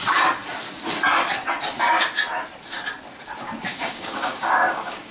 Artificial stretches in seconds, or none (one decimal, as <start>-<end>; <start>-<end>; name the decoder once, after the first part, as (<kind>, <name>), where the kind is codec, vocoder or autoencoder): 3.7-5.1 (codec, DAC)

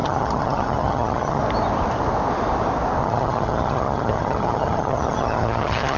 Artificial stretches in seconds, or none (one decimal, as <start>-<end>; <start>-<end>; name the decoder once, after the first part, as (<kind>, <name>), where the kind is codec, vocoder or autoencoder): 0.0-1.4 (vocoder, HiFi-GAN); 3.0-6.0

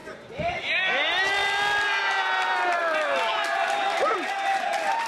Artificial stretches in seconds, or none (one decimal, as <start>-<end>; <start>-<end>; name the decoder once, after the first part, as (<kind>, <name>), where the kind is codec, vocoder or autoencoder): 0.0-0.9 (vocoder, BigVGAN v2); 2.8-4.3